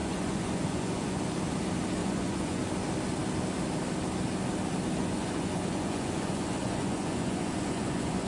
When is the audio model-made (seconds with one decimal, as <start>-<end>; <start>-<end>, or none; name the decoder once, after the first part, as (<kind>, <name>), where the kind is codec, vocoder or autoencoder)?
0.0-1.2 (vocoder, Vocos); 2.0-2.6; 5.0-8.3